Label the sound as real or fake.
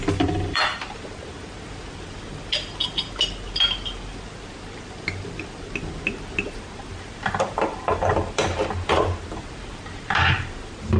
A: fake